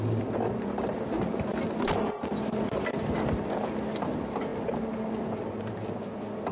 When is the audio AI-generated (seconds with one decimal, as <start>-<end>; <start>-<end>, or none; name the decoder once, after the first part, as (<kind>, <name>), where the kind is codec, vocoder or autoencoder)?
none